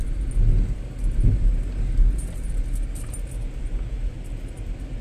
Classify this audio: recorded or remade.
recorded